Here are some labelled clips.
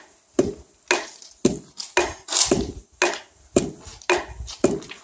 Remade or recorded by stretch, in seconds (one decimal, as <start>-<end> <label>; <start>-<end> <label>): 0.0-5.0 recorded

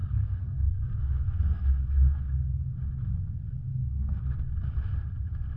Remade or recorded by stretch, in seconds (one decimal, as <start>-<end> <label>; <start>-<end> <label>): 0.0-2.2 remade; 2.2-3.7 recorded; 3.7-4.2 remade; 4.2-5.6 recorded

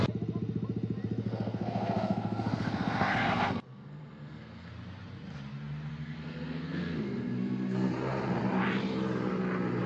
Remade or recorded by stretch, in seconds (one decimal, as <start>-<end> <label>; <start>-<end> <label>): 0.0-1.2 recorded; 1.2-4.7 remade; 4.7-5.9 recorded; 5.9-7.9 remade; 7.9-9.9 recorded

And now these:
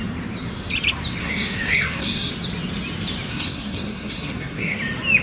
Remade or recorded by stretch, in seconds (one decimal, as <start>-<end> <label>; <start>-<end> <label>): 0.0-1.2 recorded; 1.2-2.3 remade; 2.3-3.3 recorded; 3.3-4.8 remade; 4.8-5.2 recorded

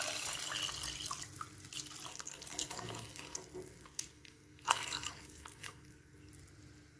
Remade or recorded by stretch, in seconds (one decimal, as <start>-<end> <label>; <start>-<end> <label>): 0.0-2.1 recorded; 2.1-6.3 remade; 6.3-7.0 recorded